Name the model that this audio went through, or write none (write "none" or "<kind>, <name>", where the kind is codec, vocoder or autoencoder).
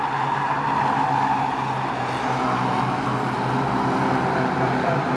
none